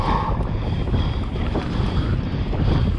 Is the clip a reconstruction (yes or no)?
yes